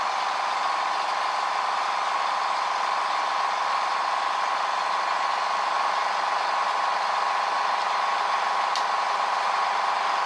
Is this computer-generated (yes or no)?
no